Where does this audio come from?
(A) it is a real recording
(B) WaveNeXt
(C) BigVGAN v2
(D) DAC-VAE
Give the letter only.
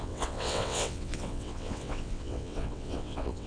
B